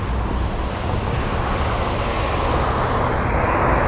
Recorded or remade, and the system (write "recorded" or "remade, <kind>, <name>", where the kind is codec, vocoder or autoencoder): recorded